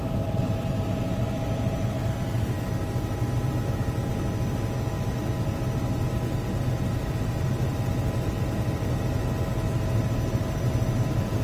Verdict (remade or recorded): recorded